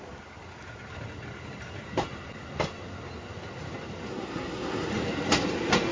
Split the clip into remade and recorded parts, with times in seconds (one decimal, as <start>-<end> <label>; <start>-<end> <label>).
0.0-4.1 recorded; 4.1-4.9 remade; 4.9-5.9 recorded